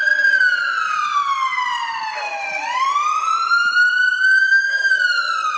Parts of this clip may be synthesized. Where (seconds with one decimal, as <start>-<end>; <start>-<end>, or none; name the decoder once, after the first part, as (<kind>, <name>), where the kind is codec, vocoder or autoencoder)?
4.4-4.9 (codec, DAC)